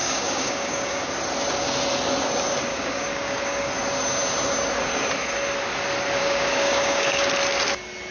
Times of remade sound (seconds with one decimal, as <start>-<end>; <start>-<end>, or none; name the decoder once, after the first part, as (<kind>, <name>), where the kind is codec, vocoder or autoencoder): 0.0-1.1 (codec, DAC); 2.7-3.7; 6.2-7.3